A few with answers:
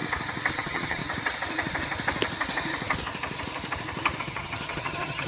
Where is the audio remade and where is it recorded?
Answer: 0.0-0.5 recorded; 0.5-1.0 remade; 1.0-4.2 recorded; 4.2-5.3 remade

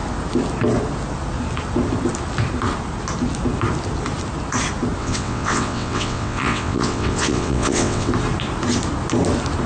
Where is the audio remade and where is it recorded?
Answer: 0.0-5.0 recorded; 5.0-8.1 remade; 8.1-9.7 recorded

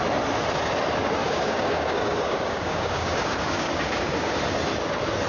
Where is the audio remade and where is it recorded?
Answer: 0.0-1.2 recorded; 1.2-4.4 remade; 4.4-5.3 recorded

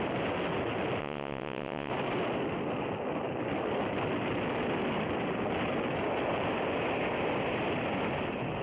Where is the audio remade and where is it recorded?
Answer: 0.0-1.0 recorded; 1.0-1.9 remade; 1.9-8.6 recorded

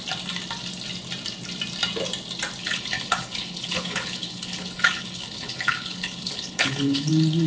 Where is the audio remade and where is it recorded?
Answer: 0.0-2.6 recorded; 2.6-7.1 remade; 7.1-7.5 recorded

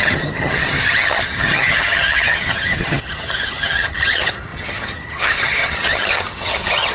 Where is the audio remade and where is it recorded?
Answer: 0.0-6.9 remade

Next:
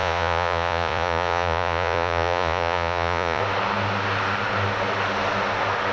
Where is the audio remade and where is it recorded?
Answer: 0.0-3.4 remade; 3.4-5.9 recorded

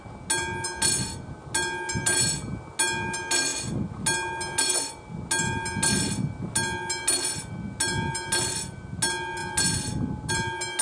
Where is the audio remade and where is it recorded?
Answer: 0.0-10.8 recorded